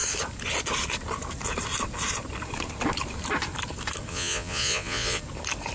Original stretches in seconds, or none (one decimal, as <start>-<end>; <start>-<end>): 0.0-4.1; 5.2-5.7